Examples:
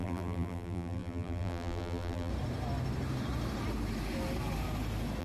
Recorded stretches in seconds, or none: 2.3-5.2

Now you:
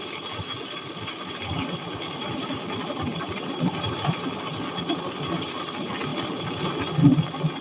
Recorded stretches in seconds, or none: 0.0-3.1; 4.4-7.6

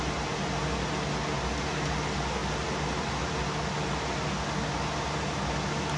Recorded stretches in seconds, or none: 0.0-6.0

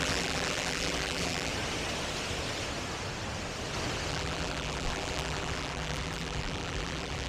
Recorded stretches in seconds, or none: 1.5-4.1